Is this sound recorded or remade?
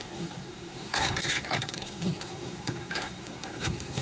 remade